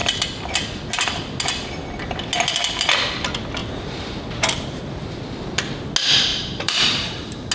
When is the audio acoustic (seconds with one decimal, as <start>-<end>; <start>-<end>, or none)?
0.0-3.6; 5.2-6.3